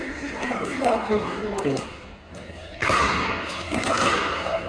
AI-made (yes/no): yes